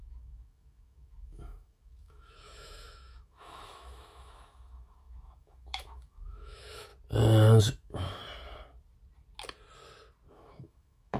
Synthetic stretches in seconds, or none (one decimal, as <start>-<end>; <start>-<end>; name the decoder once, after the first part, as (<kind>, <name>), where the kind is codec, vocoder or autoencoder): 0.0-6.9 (autoencoder, DAC-VAE); 7.6-8.2; 10.3-11.2